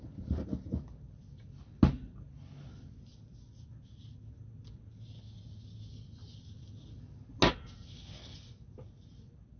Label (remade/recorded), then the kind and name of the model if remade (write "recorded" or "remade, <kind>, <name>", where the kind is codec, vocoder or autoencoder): recorded